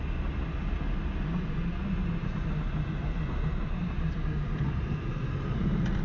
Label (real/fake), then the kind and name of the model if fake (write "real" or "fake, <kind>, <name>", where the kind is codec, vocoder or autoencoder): real